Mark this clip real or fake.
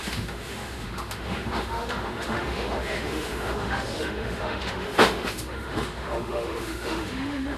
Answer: fake